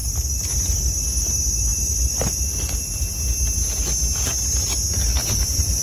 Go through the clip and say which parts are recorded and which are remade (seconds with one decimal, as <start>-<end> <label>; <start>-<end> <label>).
0.0-5.2 recorded; 5.2-5.8 remade